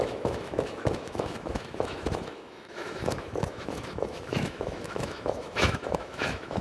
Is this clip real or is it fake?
fake